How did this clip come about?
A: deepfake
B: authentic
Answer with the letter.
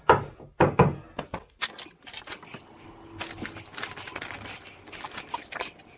B